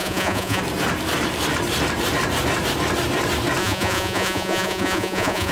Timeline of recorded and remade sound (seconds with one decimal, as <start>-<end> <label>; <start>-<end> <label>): 0.0-0.6 remade; 0.6-3.6 recorded; 3.6-5.5 remade